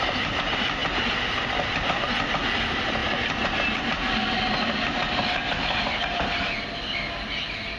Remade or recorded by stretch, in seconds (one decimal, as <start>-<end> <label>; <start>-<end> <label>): 0.0-7.8 recorded